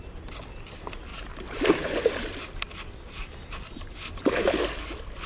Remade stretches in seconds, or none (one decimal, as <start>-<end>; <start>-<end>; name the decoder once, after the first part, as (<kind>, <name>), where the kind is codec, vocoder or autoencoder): none